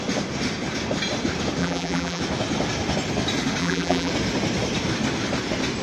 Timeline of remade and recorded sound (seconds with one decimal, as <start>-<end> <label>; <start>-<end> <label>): 0.0-1.6 recorded; 1.6-2.2 remade; 2.2-3.6 recorded; 3.6-4.1 remade; 4.1-5.8 recorded